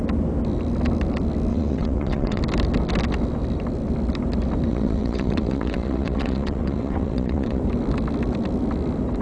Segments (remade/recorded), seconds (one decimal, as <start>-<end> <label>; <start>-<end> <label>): 0.0-1.5 recorded; 1.5-2.4 remade; 2.4-4.7 recorded; 4.7-7.6 remade; 7.6-9.2 recorded